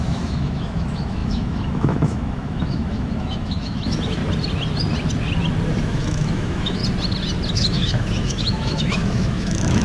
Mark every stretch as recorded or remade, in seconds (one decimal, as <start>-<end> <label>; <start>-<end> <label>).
0.0-4.2 remade; 4.2-5.8 recorded; 5.8-6.8 remade; 6.8-7.5 recorded; 7.5-9.8 remade